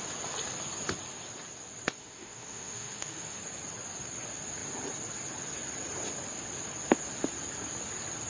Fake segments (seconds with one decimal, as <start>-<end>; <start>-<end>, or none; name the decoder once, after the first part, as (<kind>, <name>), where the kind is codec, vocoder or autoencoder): 2.0-3.4 (autoencoder, DAC-VAE)